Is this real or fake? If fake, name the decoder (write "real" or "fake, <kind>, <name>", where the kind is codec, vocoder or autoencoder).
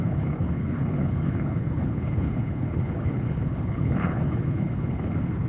fake, codec, HILCodec